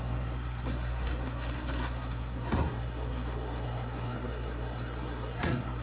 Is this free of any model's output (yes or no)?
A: no